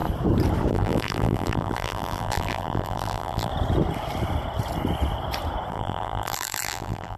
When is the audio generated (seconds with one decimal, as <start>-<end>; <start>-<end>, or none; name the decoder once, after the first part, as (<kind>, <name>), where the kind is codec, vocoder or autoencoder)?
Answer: 0.7-3.5 (vocoder, BigVGAN v2); 5.7-7.2